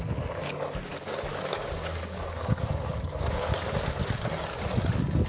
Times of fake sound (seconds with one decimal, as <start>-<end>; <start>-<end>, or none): 1.3-4.5